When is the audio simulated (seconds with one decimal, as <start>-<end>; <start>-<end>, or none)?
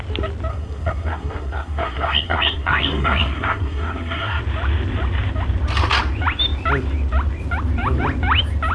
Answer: 0.5-4.4